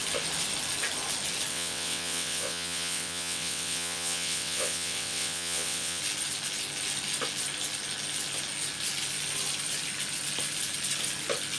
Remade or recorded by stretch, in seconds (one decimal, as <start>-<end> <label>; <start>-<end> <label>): 0.0-1.5 recorded; 1.5-6.0 remade; 6.0-11.6 recorded